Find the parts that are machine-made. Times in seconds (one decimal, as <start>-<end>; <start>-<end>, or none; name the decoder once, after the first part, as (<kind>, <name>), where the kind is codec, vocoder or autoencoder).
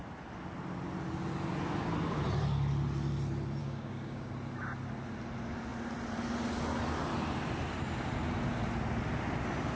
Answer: 3.6-4.3 (codec, DAC)